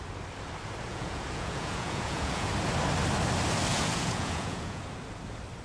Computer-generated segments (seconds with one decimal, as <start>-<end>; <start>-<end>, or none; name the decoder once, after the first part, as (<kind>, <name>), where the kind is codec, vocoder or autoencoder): 0.9-2.5 (vocoder, Vocos); 3.7-4.8